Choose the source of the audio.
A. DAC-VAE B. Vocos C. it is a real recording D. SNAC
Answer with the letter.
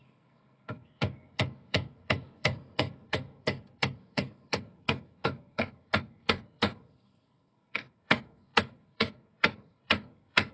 D